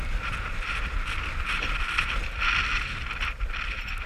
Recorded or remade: recorded